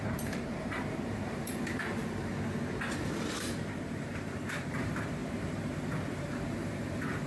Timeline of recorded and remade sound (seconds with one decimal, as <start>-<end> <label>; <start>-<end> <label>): 0.0-2.3 remade; 2.3-3.3 recorded; 3.3-7.3 remade